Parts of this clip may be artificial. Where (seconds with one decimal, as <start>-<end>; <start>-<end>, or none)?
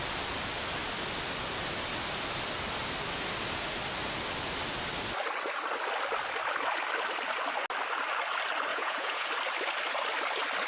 8.7-9.3